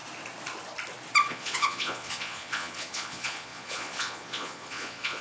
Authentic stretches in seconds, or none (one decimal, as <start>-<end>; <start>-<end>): 0.0-1.3

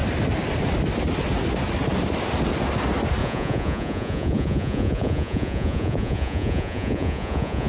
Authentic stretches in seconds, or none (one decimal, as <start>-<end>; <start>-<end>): 0.0-3.2

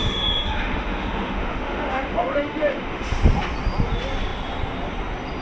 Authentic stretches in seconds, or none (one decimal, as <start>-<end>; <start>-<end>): 3.2-5.4

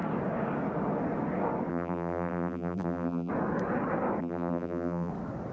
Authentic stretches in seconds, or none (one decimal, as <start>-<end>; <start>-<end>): 0.0-1.7; 3.3-4.2; 5.1-5.5

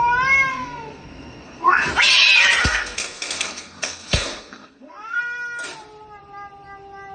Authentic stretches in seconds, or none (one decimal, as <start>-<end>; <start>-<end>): 0.0-0.5; 1.9-2.6; 5.2-7.1

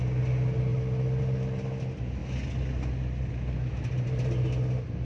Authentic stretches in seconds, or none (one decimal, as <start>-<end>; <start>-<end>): 0.0-5.0